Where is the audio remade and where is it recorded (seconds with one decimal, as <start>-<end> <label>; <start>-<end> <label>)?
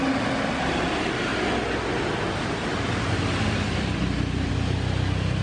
0.0-1.3 recorded; 1.3-4.5 remade; 4.5-5.4 recorded